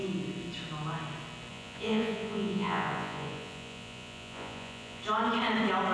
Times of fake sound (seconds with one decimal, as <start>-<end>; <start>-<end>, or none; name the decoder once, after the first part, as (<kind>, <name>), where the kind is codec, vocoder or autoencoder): 1.5-5.0 (vocoder, Vocos)